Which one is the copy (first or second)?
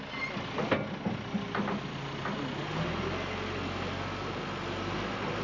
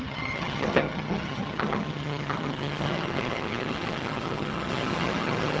second